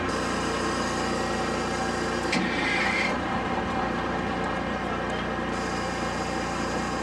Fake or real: real